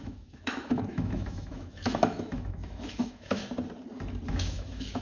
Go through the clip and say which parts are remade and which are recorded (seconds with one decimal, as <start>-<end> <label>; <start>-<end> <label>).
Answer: 0.0-3.4 remade; 3.4-4.3 recorded; 4.3-5.0 remade